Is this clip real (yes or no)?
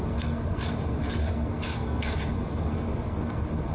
no